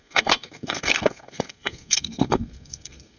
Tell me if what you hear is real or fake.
fake